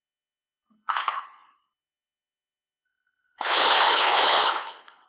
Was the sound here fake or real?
fake